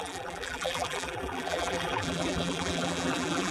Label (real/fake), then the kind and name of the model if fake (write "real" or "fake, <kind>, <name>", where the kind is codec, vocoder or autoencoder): fake, vocoder, BigVGAN v2